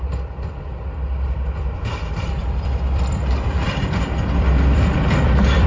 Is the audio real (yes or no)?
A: no